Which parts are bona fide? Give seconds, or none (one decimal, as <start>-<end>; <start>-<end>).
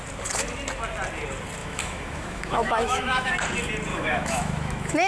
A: 0.0-1.6; 3.3-3.9